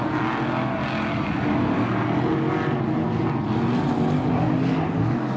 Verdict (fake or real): real